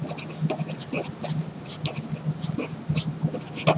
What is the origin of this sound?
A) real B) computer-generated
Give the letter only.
A